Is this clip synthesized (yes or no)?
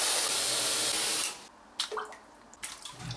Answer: no